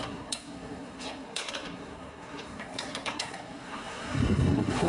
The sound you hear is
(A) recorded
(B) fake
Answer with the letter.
B